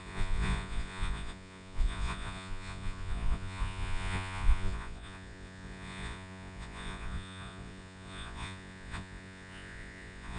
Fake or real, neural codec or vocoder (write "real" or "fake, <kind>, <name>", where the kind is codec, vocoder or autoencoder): fake, vocoder, Vocos